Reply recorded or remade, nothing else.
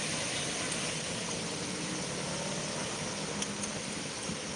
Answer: recorded